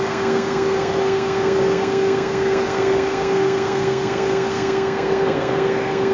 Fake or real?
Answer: fake